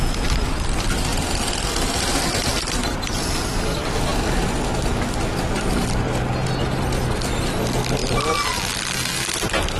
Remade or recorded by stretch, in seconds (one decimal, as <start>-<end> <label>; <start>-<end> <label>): 0.0-1.1 recorded; 1.1-2.7 remade; 2.7-9.8 recorded